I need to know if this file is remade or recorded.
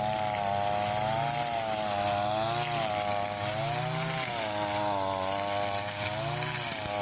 recorded